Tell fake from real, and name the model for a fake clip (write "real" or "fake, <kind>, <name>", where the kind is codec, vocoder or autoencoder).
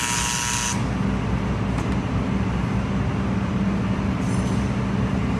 real